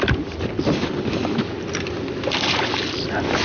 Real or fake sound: real